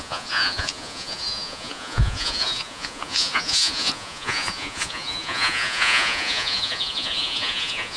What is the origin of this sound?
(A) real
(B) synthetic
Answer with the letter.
B